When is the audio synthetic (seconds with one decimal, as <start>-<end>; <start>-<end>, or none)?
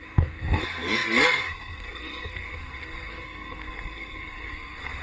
0.0-5.0